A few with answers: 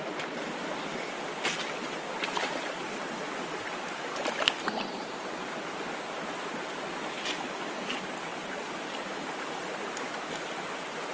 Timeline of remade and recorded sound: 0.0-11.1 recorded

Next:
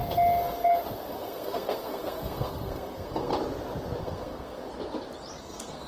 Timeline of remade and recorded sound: 0.0-1.1 recorded; 1.1-3.3 remade; 3.3-4.0 recorded; 4.0-4.6 remade; 4.6-5.4 recorded; 5.4-5.9 remade

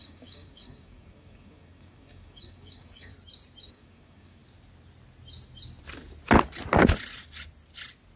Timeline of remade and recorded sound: 0.0-3.1 remade; 3.1-3.7 recorded; 3.7-4.4 remade; 4.4-8.2 recorded

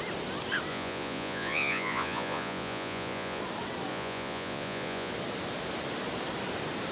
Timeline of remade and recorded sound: 0.0-0.7 recorded; 0.7-3.4 remade; 3.4-3.9 recorded; 3.9-5.1 remade; 5.1-6.9 recorded

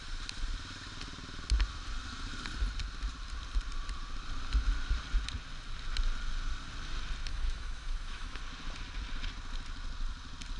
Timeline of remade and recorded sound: 0.0-7.3 recorded; 7.3-8.4 remade; 8.4-10.6 recorded

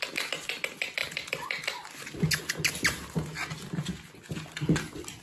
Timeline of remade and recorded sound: 0.0-5.2 recorded